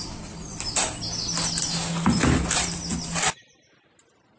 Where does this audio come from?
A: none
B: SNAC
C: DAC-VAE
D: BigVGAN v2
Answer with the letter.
A